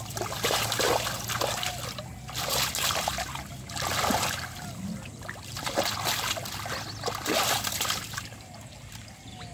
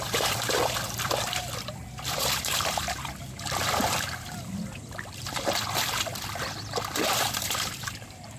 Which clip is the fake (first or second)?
second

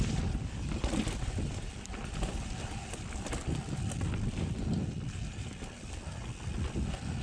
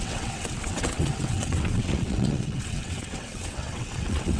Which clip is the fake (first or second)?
second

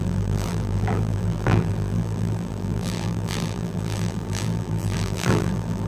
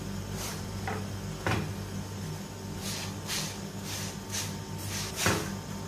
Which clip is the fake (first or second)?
first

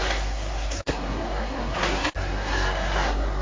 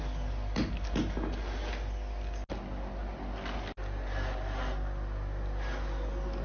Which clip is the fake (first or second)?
first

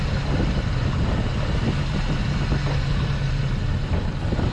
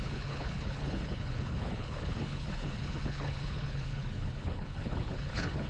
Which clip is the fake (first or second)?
second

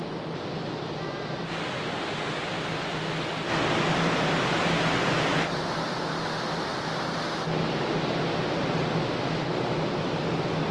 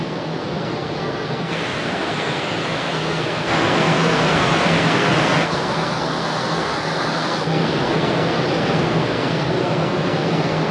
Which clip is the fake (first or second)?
second